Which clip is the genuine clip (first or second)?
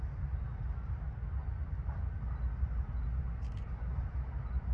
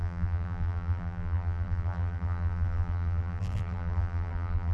first